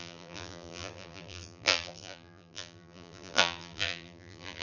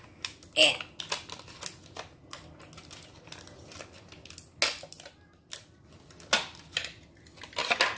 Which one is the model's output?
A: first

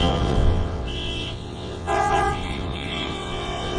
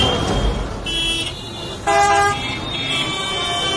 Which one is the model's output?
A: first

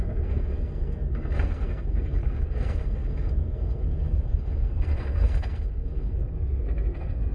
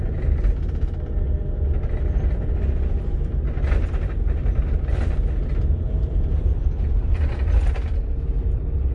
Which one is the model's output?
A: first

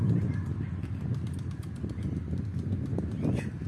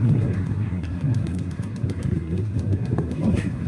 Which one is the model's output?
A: second